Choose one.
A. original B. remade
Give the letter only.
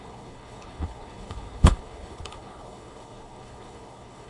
B